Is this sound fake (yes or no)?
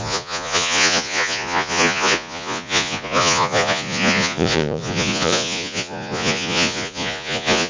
yes